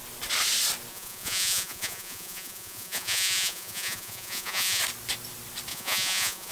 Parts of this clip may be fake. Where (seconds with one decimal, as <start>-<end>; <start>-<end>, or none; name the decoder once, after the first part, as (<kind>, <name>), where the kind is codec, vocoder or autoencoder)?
0.9-4.8 (vocoder, Vocos); 5.7-6.5